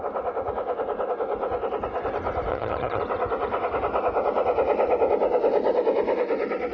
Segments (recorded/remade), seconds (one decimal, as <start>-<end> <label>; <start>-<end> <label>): 0.0-2.5 recorded; 2.5-3.0 remade; 3.0-6.7 recorded